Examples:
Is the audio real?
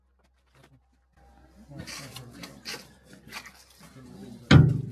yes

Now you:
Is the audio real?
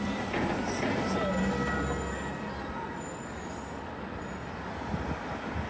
yes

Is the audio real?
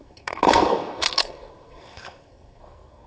no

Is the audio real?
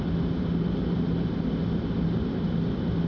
yes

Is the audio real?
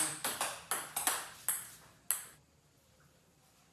yes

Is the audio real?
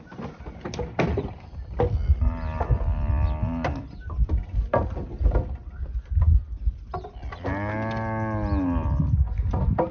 yes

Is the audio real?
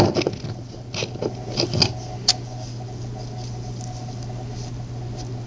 yes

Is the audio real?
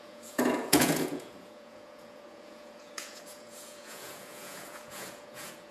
no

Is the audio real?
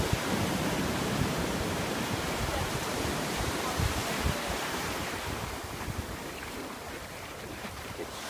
no